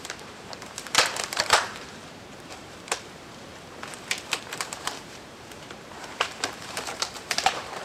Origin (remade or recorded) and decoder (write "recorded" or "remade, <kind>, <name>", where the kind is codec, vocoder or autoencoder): remade, vocoder, BigVGAN v2